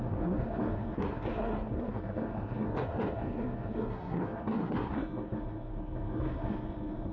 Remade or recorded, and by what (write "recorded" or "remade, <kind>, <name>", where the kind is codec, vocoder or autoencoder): remade, codec, SNAC